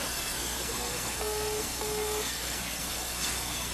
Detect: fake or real fake